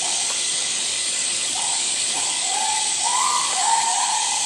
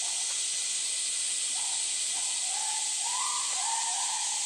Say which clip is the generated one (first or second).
first